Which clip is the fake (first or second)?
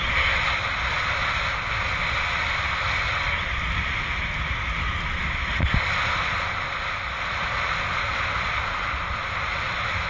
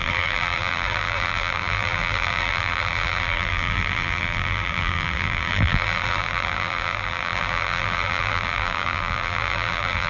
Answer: second